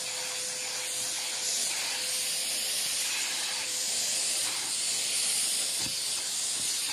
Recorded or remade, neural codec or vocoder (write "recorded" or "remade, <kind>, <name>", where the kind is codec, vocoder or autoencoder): recorded